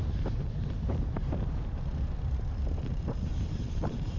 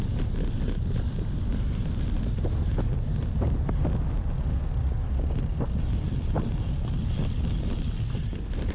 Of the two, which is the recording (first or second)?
second